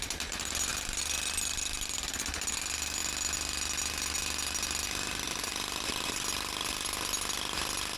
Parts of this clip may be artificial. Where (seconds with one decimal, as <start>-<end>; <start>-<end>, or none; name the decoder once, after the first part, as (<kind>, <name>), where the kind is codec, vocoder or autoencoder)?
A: none